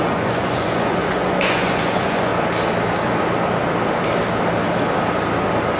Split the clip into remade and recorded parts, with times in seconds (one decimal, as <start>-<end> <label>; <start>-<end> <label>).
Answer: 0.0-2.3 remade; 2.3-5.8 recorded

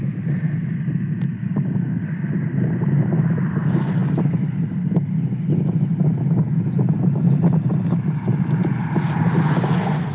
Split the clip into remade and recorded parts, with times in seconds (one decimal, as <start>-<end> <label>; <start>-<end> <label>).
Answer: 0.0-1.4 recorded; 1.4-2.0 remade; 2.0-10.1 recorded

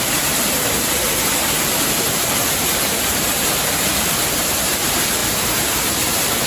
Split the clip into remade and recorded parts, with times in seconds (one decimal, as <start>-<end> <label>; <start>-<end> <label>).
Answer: 0.0-6.5 remade

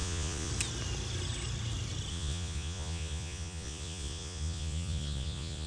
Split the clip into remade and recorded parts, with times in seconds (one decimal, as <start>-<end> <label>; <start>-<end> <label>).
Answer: 0.0-0.5 remade; 0.5-2.1 recorded; 2.1-5.7 remade

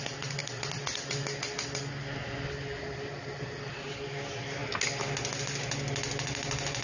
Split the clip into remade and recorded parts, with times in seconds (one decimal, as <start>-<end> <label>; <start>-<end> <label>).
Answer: 0.0-6.8 recorded

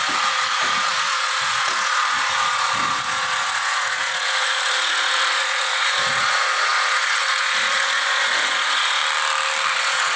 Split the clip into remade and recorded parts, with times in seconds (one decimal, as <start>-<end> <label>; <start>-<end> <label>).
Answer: 0.0-9.0 remade; 9.0-9.7 recorded; 9.7-10.2 remade